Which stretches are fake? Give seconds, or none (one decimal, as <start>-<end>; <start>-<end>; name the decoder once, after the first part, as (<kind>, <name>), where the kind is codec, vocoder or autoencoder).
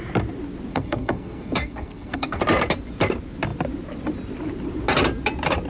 0.7-2.4 (codec, SNAC)